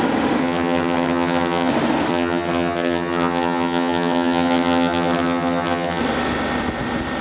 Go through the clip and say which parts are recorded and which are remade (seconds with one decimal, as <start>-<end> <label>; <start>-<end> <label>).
0.0-0.4 recorded; 0.4-1.7 remade; 1.7-2.1 recorded; 2.1-6.0 remade; 6.0-7.2 recorded